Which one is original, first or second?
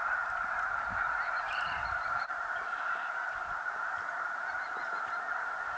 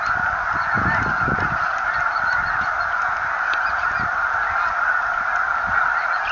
second